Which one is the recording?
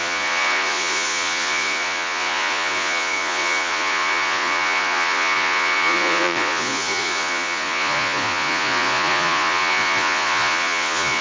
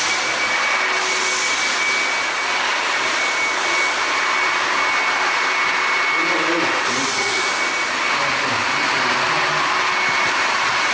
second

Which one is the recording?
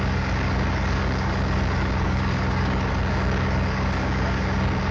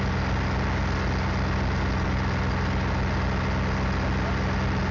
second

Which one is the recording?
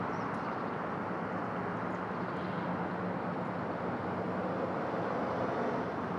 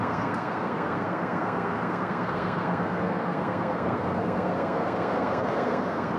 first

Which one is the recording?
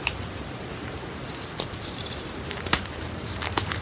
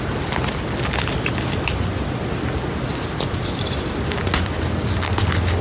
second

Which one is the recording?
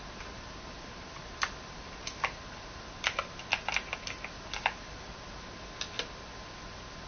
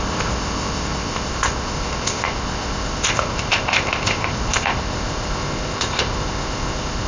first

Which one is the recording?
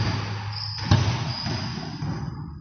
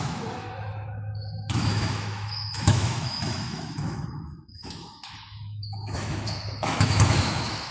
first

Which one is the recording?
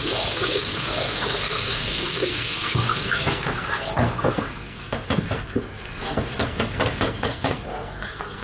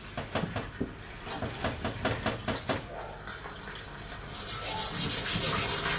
second